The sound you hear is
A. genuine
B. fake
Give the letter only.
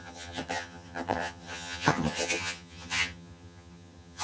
B